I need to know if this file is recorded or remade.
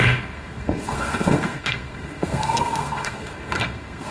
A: remade